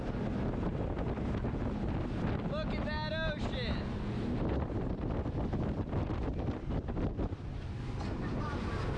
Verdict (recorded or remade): recorded